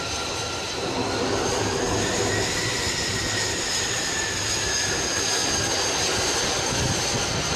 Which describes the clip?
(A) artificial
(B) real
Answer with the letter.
A